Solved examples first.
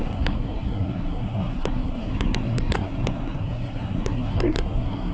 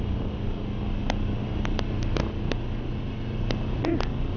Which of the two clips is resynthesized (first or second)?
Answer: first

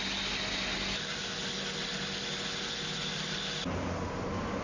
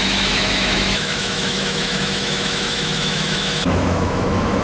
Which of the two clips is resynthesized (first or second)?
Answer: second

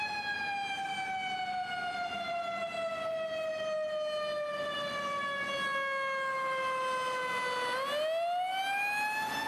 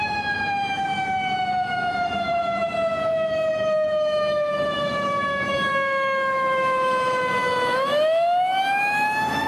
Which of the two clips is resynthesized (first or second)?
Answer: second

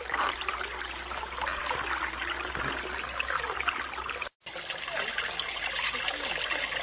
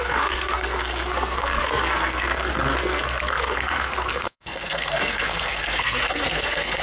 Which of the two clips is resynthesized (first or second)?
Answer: second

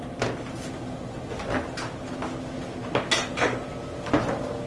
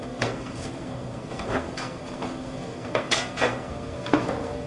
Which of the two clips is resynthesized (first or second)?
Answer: second